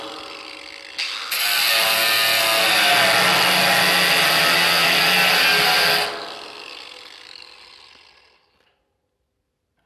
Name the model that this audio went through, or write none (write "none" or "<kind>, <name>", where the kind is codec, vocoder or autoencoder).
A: none